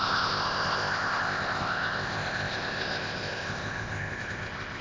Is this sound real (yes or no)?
no